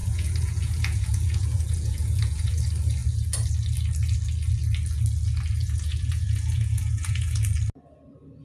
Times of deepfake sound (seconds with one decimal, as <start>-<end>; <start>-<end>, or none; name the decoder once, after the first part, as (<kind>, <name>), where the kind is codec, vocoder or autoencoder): 0.0-2.6 (vocoder, Vocos); 5.6-7.4